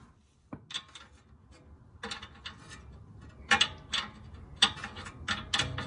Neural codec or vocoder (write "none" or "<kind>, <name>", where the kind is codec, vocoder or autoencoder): none